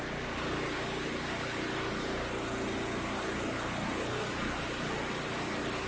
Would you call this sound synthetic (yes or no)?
no